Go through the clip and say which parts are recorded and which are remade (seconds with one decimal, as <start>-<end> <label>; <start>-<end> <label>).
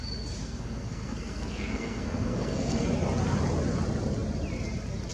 0.0-0.4 recorded; 0.4-2.9 remade; 2.9-5.1 recorded